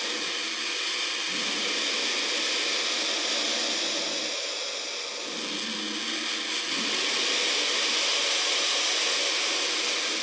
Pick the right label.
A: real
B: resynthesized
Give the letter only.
A